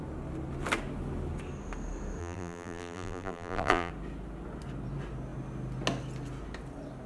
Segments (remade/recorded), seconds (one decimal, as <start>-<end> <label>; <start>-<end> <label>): 0.0-2.2 recorded; 2.2-3.9 remade; 3.9-7.1 recorded